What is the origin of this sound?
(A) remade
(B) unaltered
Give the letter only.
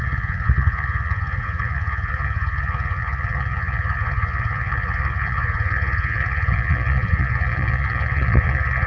A